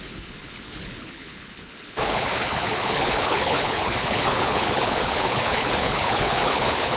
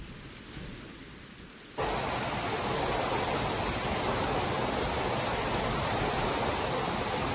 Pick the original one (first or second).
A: second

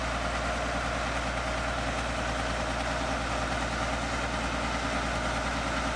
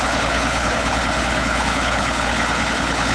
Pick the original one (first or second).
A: first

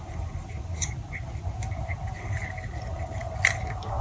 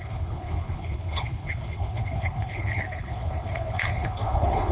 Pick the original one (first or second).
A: first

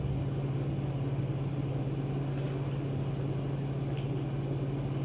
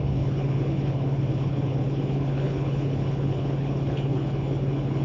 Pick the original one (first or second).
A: first